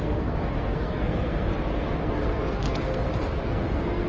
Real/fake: fake